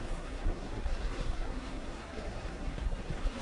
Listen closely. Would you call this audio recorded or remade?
remade